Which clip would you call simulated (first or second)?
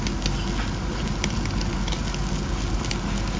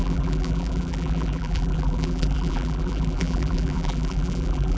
second